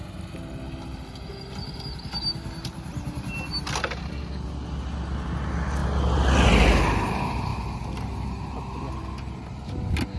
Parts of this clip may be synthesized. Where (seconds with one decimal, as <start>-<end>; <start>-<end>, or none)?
none